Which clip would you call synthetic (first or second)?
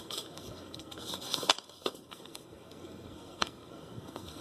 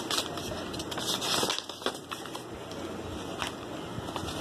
first